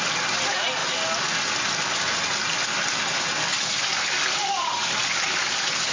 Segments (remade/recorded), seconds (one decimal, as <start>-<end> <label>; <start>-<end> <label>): 0.0-5.9 recorded